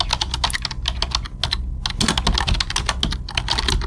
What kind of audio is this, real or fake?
real